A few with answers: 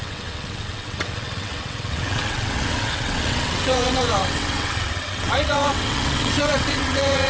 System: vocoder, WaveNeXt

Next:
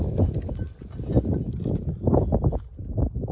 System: none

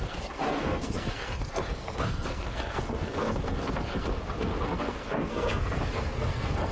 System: codec, SNAC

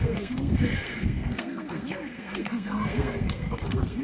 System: codec, SNAC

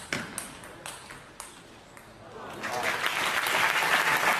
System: none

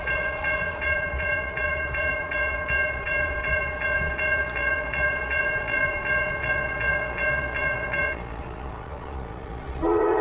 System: vocoder, Vocos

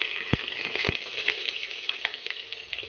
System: codec, SNAC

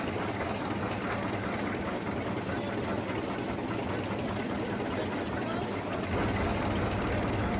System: none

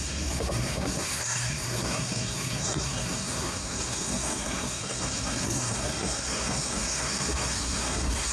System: codec, SNAC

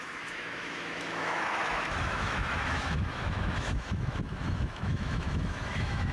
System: autoencoder, DAC-VAE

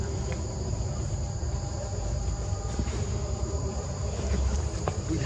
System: vocoder, BigVGAN v2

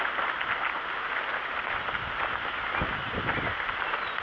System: none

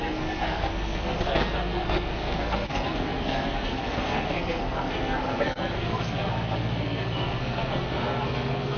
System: codec, SNAC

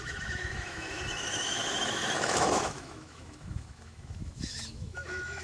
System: autoencoder, DAC-VAE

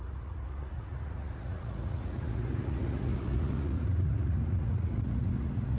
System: vocoder, Vocos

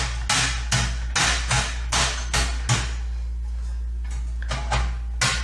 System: none